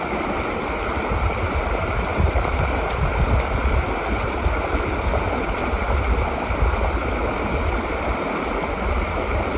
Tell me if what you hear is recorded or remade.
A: recorded